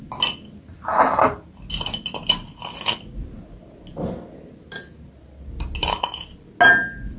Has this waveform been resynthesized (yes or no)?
no